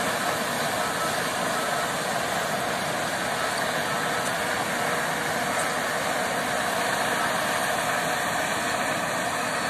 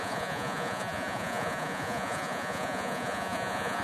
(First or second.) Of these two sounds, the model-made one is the second